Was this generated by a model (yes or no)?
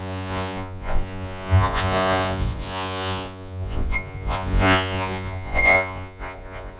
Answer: yes